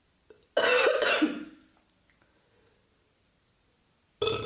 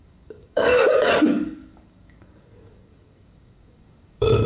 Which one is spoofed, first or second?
second